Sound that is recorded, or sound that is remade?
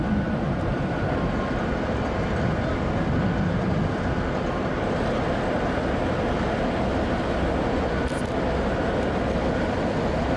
recorded